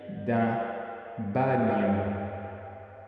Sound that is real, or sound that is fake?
real